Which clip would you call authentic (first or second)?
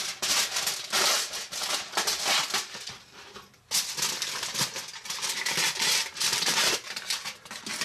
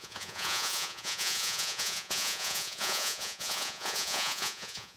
first